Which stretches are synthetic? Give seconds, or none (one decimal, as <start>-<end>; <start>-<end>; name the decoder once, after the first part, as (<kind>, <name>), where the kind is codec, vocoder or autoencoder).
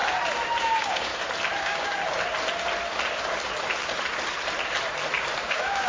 0.6-1.1 (codec, DAC); 1.6-2.0; 5.5-5.9